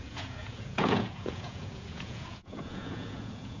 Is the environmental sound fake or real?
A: fake